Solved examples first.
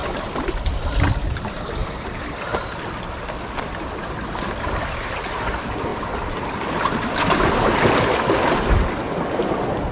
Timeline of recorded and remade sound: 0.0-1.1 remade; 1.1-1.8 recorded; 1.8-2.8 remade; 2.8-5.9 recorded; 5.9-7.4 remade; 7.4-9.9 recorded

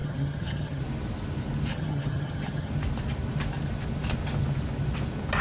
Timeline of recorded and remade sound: 0.0-0.8 remade; 0.8-1.7 recorded; 1.7-2.7 remade; 2.7-5.4 recorded